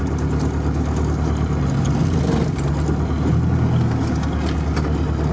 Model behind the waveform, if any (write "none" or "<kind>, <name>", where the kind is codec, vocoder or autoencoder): none